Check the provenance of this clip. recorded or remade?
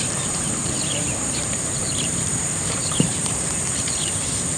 remade